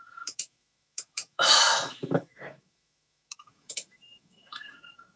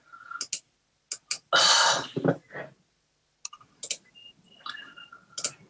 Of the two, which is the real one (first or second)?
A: second